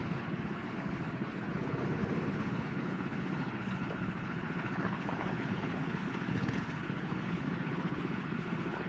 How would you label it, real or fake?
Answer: fake